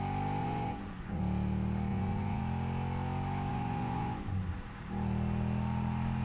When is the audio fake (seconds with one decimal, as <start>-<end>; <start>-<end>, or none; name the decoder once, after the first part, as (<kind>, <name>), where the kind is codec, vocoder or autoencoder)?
0.4-1.2 (vocoder, Vocos); 1.9-2.4; 3.5-4.5